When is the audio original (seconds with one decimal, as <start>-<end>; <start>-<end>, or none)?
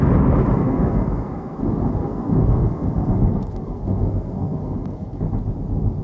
0.0-0.6; 1.6-2.0; 5.2-6.0